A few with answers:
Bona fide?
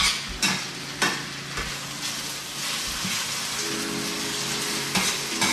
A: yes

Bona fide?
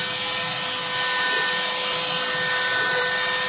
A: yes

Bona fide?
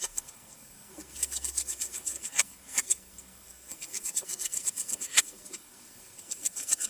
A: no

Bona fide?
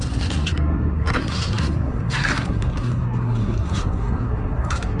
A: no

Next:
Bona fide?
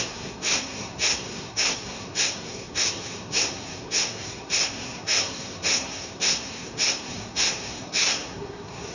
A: no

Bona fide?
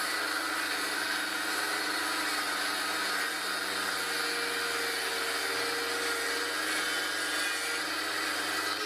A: yes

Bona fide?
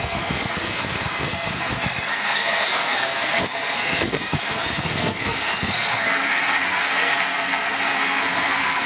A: no